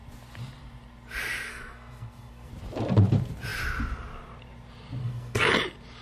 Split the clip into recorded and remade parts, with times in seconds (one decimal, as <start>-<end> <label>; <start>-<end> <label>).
0.0-1.5 recorded; 1.5-2.5 remade; 2.5-5.0 recorded; 5.0-5.5 remade; 5.5-6.0 recorded